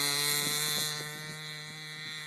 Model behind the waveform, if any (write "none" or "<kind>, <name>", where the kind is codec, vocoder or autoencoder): none